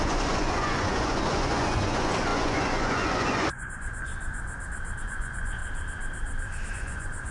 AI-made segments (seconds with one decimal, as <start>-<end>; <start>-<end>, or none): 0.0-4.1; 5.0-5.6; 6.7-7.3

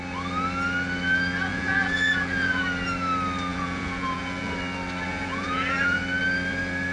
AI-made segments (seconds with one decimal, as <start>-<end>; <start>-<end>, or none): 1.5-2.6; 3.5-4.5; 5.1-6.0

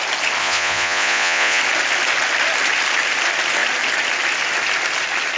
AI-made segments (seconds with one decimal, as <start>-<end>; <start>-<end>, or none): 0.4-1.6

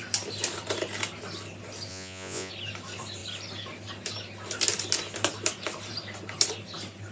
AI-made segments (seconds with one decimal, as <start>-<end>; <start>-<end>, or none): 1.9-2.5